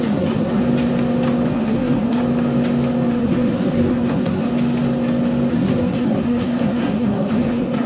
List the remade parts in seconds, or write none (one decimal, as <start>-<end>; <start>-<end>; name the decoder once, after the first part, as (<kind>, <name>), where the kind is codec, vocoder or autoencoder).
0.0-0.6 (codec, SNAC); 1.5-2.2; 3.1-4.5; 5.5-7.9

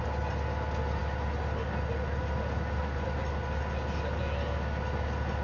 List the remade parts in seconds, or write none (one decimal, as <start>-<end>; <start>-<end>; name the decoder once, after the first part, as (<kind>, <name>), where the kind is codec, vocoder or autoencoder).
none

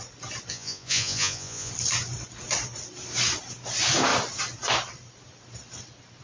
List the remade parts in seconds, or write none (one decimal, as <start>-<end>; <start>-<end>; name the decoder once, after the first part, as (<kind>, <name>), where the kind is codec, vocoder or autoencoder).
0.5-1.7 (vocoder, Vocos)